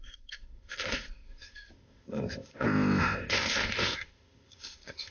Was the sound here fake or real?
fake